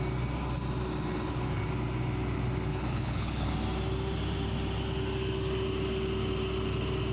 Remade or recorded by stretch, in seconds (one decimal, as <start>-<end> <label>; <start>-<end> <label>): 0.0-2.7 recorded; 2.7-3.5 remade; 3.5-7.1 recorded